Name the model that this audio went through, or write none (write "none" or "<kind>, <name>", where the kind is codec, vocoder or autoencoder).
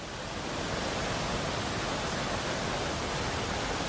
none